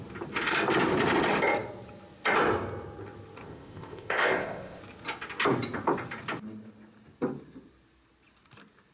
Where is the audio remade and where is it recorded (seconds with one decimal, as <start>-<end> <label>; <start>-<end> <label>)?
0.0-3.5 recorded; 3.5-4.8 remade; 4.8-8.9 recorded